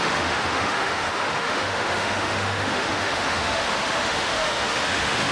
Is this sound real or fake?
fake